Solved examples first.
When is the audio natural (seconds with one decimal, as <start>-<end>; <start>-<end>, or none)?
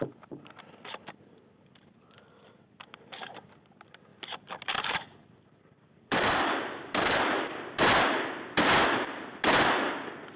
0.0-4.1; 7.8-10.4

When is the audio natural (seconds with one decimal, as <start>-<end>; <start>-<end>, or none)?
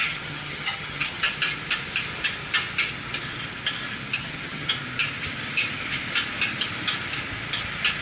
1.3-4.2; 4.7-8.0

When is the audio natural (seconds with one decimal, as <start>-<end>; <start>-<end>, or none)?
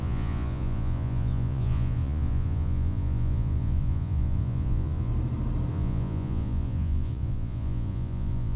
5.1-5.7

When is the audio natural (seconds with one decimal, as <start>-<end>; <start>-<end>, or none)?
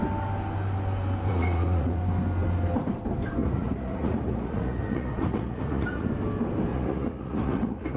0.0-1.3; 2.0-3.4; 6.1-6.7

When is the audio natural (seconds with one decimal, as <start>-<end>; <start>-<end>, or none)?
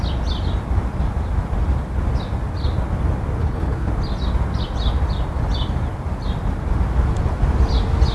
0.0-3.4; 3.9-8.1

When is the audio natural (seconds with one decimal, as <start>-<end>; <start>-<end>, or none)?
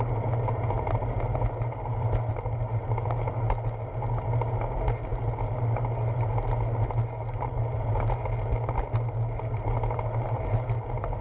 0.0-11.2